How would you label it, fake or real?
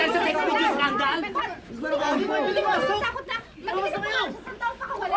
real